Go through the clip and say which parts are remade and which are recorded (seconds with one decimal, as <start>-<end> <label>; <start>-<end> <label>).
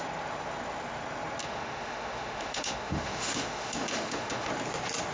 0.0-1.4 recorded; 1.4-4.5 remade; 4.5-5.1 recorded